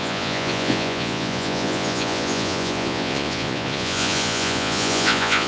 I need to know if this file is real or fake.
fake